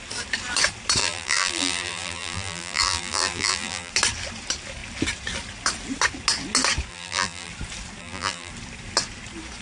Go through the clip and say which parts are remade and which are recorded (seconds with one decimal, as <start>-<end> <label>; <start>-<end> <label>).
0.0-1.0 recorded; 1.0-3.9 remade; 3.9-6.9 recorded; 6.9-7.5 remade; 7.5-8.0 recorded; 8.0-8.5 remade; 8.5-9.6 recorded